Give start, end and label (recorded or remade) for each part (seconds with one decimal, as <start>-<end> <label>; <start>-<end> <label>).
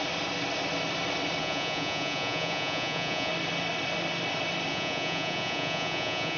0.0-1.4 recorded; 1.4-3.3 remade; 3.3-4.7 recorded; 4.7-6.4 remade